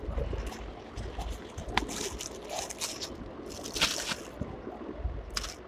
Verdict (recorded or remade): recorded